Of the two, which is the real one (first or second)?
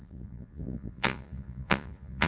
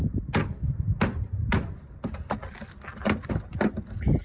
second